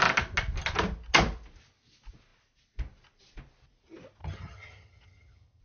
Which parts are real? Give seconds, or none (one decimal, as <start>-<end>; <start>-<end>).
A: 0.0-4.2